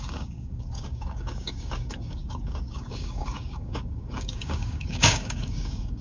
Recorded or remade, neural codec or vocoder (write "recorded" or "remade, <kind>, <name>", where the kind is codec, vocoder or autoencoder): remade, codec, DAC